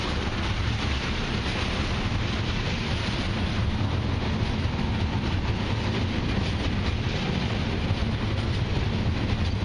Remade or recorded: recorded